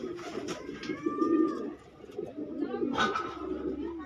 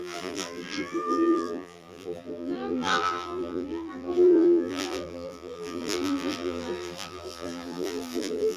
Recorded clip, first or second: first